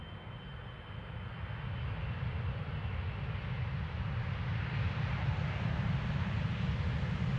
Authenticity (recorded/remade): recorded